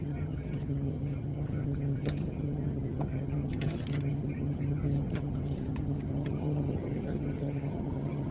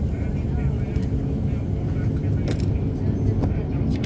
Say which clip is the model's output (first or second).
first